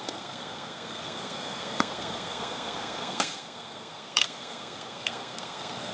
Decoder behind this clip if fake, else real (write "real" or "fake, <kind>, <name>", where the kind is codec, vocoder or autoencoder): fake, codec, SNAC